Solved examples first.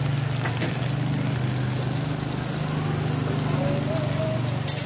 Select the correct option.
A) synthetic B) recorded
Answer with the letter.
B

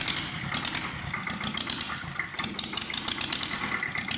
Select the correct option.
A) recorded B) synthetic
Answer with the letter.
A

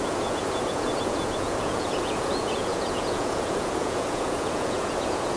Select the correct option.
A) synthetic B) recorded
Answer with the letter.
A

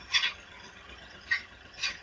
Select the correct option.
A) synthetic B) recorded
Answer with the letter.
A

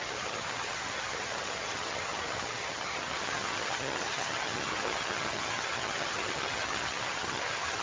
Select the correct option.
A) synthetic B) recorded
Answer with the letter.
A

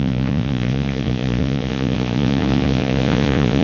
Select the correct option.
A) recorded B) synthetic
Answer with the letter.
B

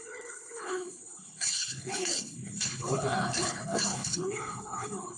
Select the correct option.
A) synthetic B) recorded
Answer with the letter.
A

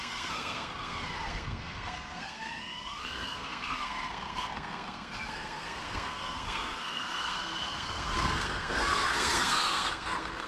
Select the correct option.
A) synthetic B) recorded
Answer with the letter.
A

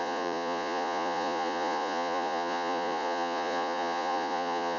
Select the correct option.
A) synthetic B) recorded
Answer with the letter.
A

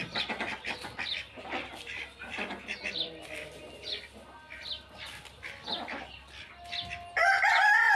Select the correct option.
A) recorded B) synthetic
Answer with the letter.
A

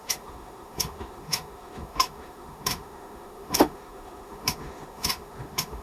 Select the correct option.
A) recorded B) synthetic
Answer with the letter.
B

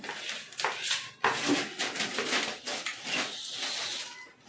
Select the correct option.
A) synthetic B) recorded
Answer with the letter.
B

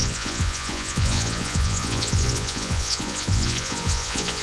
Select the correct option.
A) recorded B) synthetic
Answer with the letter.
B